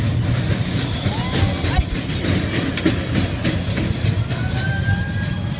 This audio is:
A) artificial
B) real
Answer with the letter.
B